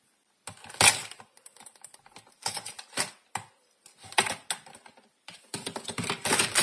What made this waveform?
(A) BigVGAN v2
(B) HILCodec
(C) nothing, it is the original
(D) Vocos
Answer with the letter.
C